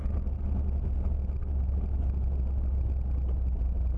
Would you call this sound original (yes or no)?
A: yes